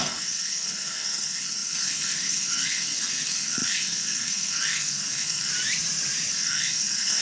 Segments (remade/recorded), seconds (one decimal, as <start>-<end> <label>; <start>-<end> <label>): 0.0-5.5 remade; 5.5-6.3 recorded; 6.3-7.2 remade